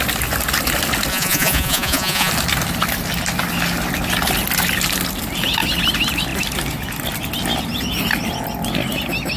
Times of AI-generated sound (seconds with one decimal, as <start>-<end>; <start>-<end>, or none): 1.1-2.3